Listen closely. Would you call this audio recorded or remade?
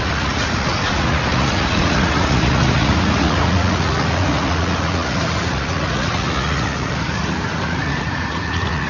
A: remade